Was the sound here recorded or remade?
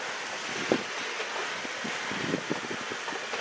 recorded